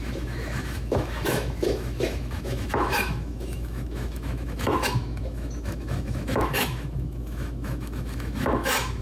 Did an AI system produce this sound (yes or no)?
yes